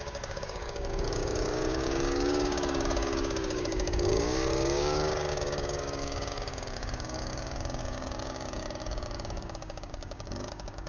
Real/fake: fake